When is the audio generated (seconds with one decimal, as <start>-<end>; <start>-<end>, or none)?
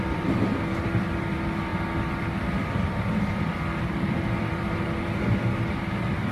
0.0-6.3